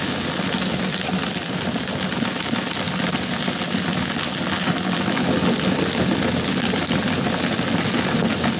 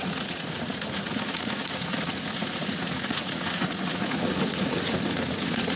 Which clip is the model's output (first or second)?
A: second